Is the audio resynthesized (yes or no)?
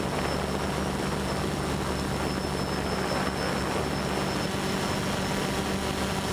no